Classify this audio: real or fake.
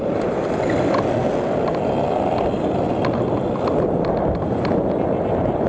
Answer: real